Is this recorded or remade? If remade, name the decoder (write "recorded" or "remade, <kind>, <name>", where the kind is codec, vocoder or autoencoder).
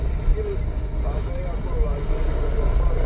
recorded